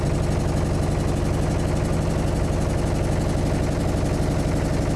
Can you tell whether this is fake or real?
real